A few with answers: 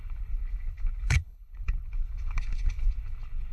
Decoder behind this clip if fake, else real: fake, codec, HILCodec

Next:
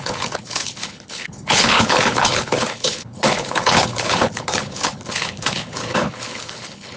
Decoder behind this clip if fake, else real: fake, codec, HILCodec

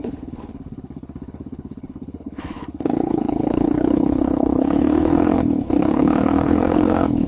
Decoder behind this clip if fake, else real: fake, codec, HILCodec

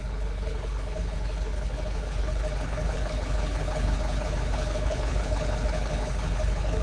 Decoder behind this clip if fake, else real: fake, codec, HILCodec